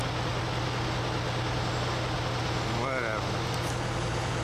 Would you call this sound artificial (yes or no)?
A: no